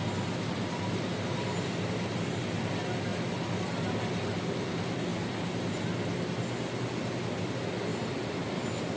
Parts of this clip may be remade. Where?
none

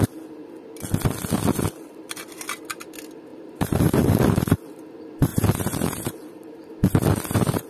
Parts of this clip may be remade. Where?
3.3-4.1 (vocoder, BigVGAN v2); 5.3-6.7

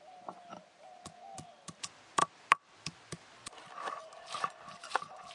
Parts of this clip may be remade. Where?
none

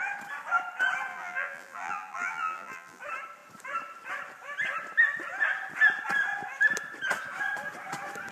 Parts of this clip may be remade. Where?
1.1-3.0 (vocoder, BigVGAN v2)

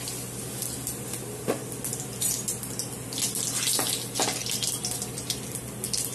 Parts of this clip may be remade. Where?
none

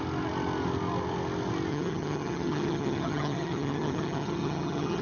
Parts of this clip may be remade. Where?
1.7-5.0 (vocoder, HiFi-GAN)

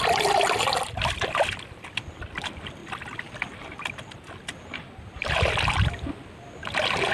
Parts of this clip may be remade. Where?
none